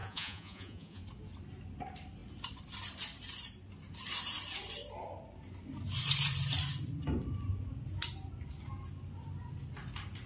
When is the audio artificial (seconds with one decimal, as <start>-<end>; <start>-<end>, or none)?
0.0-1.0